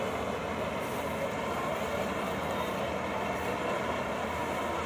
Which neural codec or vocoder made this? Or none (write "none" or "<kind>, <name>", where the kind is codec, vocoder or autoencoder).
none